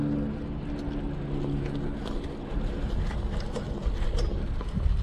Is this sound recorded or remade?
recorded